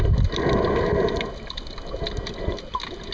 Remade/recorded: recorded